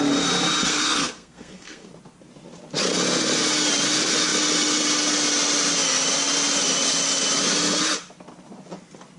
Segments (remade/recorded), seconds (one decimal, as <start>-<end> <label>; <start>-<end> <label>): 0.0-0.7 recorded; 0.7-1.9 remade; 1.9-9.2 recorded